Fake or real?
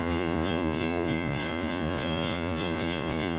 fake